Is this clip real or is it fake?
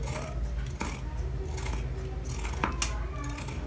real